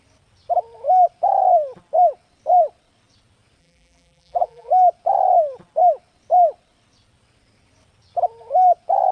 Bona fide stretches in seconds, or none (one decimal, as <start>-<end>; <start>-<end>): 0.0-3.6; 4.7-9.1